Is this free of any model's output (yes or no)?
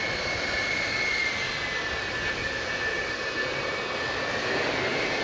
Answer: yes